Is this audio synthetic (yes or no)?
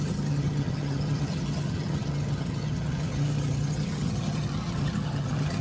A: yes